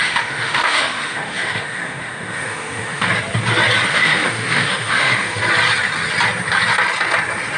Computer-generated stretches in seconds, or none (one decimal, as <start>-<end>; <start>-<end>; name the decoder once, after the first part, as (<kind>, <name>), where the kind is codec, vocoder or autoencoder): 0.0-3.1 (autoencoder, DAC-VAE); 3.9-5.4